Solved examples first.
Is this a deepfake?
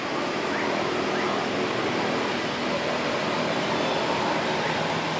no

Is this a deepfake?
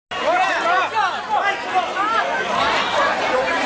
no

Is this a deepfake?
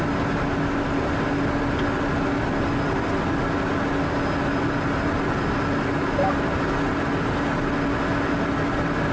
no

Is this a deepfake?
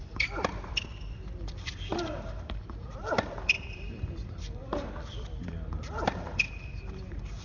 yes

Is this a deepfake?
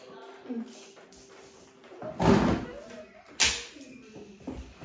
no